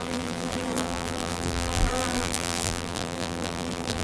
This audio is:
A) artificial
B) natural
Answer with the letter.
A